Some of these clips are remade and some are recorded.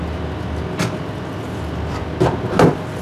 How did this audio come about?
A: recorded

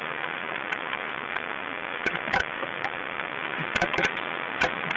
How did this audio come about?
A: remade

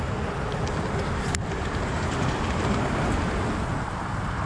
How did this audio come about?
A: recorded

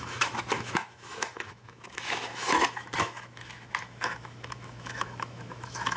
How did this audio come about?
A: remade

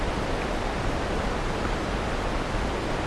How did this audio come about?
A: recorded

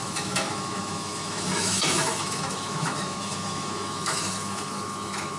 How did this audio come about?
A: remade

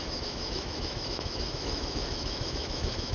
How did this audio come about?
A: remade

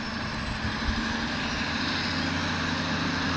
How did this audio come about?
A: recorded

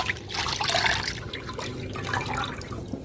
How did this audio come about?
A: recorded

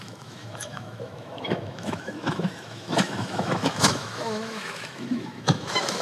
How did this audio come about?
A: remade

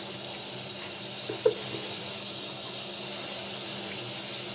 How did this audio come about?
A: recorded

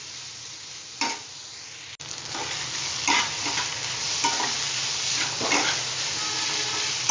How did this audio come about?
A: recorded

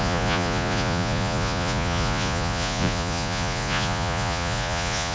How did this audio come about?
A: remade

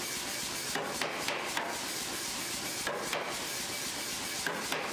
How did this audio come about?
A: remade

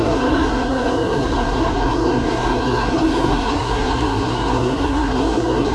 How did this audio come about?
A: remade